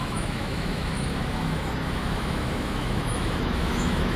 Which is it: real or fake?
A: fake